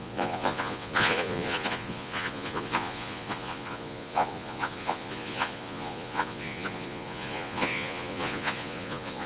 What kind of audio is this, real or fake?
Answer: fake